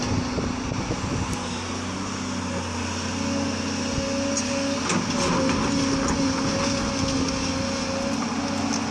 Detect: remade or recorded recorded